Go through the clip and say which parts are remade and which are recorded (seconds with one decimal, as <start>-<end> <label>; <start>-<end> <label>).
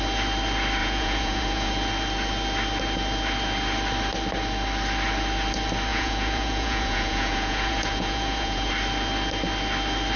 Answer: 0.0-0.8 recorded; 0.8-1.7 remade; 1.7-5.9 recorded; 5.9-8.7 remade; 8.7-10.2 recorded